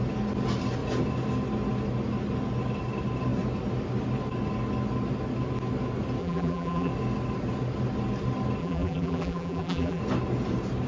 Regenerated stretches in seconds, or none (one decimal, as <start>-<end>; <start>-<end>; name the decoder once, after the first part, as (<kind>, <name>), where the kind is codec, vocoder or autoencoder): 6.2-6.9 (vocoder, BigVGAN v2); 8.6-10.0